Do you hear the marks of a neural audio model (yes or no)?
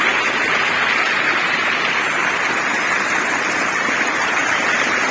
no